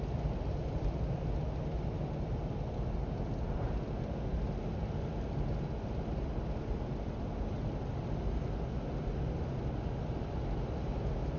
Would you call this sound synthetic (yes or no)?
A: no